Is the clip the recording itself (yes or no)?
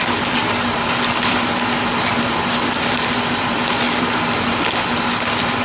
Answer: yes